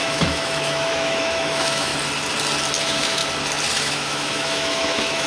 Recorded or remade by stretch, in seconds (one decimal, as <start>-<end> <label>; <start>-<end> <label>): 0.0-1.9 remade; 1.9-2.8 recorded; 2.8-3.2 remade; 3.2-3.8 recorded; 3.8-5.3 remade